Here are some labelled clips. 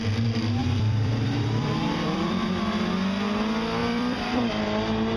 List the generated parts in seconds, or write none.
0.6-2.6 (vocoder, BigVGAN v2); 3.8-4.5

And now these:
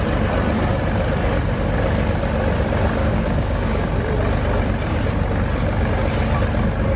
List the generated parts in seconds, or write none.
3.0-3.9 (codec, DAC)

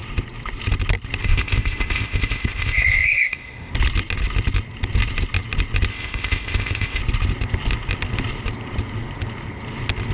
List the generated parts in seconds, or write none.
1.2-3.7 (codec, ZipCodec); 5.9-7.0

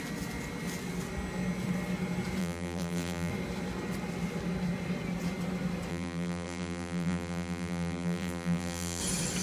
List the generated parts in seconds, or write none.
2.4-3.3 (vocoder, BigVGAN v2); 5.9-9.0

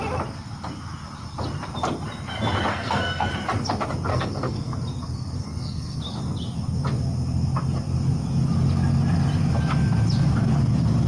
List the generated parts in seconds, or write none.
2.7-3.3 (codec, SNAC); 4.1-4.8; 5.4-6.0

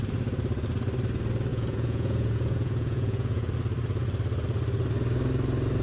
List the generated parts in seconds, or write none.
1.5-3.5 (vocoder, Vocos)